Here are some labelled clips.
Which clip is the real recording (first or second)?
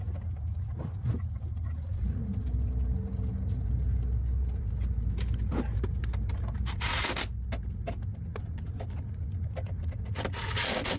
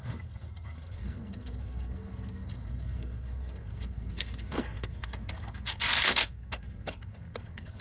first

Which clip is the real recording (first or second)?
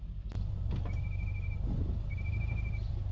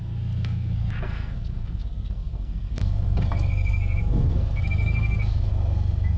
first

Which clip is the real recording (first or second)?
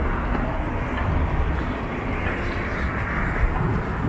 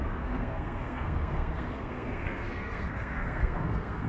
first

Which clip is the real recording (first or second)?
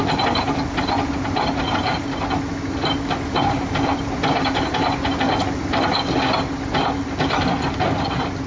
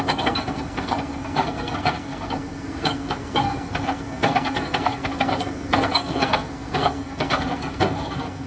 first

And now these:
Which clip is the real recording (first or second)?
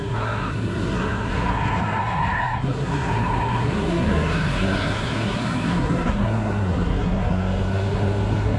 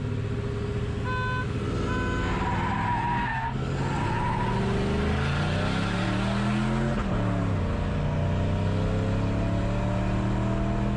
second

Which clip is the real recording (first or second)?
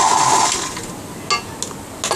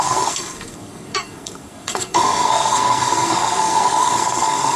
first